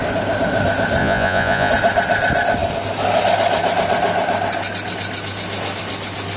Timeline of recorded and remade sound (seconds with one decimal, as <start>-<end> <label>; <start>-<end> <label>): 0.0-1.0 recorded; 1.0-1.7 remade; 1.7-6.4 recorded